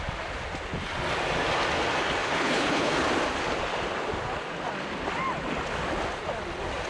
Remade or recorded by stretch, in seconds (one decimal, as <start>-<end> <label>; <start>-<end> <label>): 0.0-2.3 recorded; 2.3-2.9 remade; 2.9-6.9 recorded